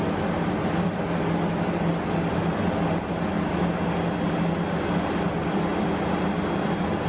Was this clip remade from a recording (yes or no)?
no